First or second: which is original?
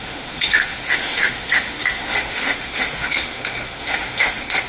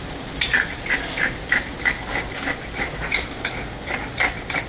second